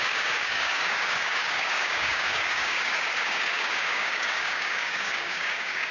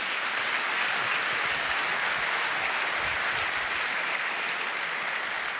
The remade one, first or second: first